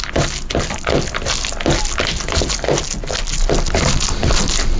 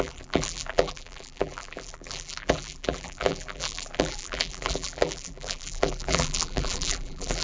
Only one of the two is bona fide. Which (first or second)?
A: first